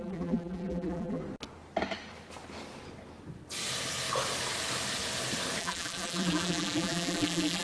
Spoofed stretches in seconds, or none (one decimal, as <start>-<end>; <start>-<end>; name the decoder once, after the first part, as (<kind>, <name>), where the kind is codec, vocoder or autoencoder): 0.0-1.2 (vocoder, BigVGAN v2); 5.6-7.6